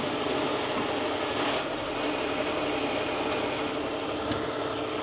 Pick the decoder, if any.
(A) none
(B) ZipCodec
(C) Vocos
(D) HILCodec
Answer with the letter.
A